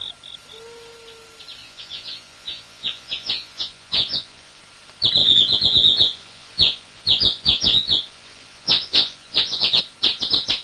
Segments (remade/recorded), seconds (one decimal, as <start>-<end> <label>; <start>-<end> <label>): 0.0-1.6 recorded; 1.6-4.6 remade; 4.6-5.2 recorded; 5.2-9.8 remade; 9.8-10.6 recorded